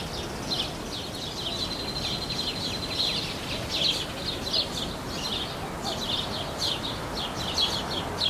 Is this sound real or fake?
real